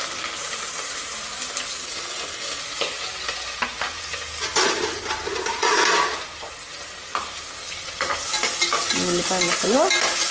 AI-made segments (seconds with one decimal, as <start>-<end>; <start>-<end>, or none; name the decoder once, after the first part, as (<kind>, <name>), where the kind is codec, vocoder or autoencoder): 1.8-2.6 (codec, HILCodec)